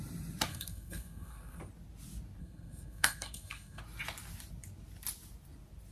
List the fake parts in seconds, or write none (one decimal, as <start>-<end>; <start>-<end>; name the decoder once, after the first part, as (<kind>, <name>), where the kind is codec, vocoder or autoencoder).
0.5-1.6 (codec, SNAC); 2.4-3.8